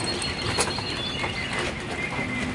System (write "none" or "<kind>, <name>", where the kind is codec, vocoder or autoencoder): none